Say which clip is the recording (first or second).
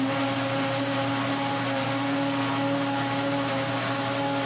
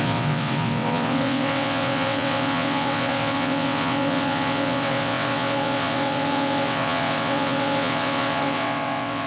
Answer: first